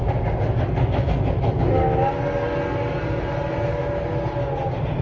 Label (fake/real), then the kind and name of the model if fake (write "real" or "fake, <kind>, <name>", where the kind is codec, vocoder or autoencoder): real